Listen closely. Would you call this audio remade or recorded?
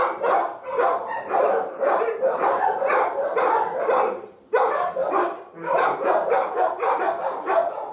remade